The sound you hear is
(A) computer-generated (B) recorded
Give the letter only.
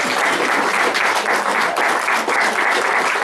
B